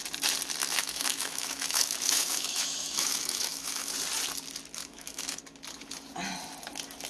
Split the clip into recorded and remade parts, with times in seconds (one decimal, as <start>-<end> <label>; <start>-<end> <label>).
0.0-0.6 recorded; 0.6-3.9 remade; 3.9-4.8 recorded; 4.8-5.4 remade; 5.4-7.1 recorded